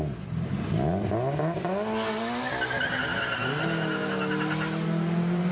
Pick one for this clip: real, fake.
real